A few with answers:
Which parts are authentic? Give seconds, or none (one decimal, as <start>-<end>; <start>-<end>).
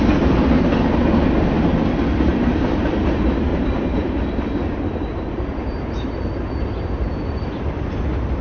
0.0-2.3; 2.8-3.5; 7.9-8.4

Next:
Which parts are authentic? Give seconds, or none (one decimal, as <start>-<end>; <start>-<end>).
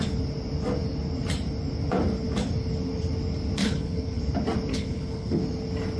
0.0-3.6; 4.2-4.7; 5.4-6.0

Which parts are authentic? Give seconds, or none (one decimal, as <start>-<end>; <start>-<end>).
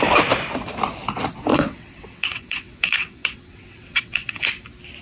0.0-1.5; 4.5-5.0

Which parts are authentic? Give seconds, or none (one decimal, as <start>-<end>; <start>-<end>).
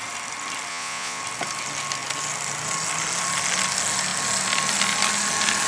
0.0-0.7; 1.2-5.7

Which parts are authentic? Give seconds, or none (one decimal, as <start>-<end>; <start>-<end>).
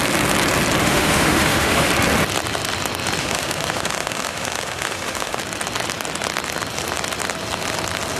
0.0-0.8; 1.9-3.2; 5.4-8.2